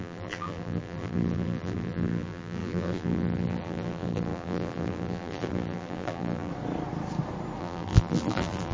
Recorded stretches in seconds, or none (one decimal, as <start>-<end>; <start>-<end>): 6.5-7.6